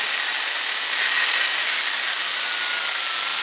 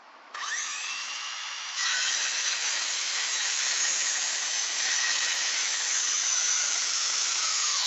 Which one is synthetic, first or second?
second